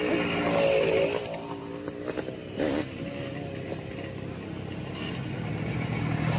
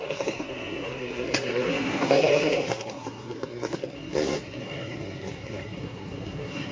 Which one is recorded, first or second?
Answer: first